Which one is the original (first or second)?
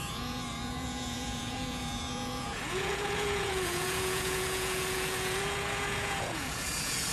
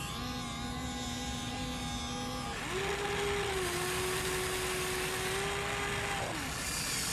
second